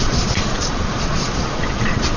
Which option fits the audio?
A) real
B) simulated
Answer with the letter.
B